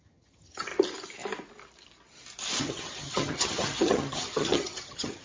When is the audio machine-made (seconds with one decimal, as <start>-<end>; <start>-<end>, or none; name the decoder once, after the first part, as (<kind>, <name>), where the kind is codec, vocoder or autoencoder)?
0.0-0.7 (vocoder, HiFi-GAN); 2.6-5.2

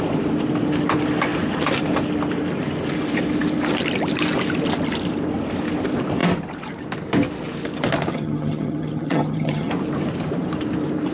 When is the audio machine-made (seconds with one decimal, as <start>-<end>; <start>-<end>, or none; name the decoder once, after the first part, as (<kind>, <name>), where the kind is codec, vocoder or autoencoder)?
8.1-9.7 (vocoder, HiFi-GAN)